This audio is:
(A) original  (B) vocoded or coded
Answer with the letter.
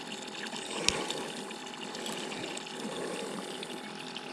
A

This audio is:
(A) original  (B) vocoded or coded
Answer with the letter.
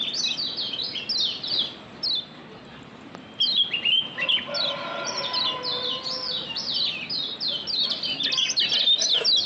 A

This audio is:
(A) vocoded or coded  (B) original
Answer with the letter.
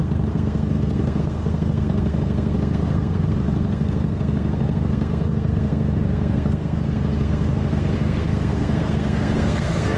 A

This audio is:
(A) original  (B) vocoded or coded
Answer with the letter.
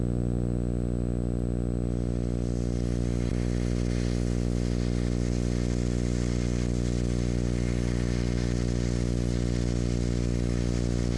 A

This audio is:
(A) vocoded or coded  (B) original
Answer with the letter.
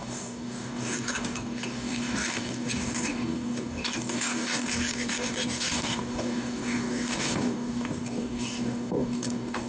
A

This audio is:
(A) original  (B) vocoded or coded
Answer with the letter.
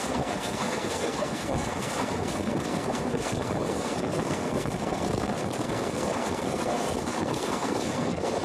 B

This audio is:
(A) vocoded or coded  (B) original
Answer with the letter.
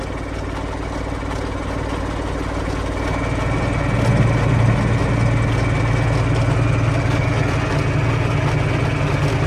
B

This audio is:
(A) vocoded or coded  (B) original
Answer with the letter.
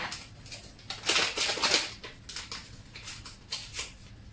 B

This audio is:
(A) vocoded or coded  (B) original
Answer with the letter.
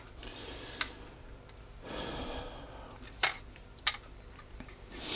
A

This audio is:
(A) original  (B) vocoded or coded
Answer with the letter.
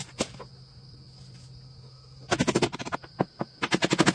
A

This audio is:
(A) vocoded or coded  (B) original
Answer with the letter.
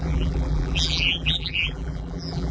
A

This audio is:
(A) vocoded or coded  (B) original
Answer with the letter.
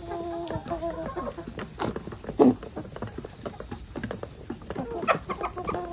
B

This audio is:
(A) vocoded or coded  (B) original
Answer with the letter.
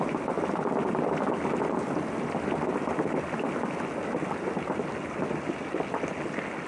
B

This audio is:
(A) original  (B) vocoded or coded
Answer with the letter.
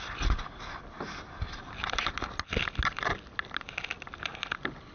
A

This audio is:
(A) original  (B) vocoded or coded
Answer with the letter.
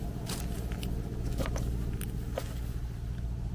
A